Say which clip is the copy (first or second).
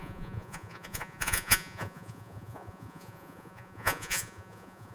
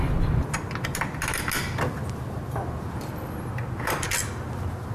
first